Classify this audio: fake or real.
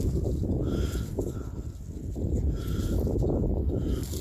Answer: real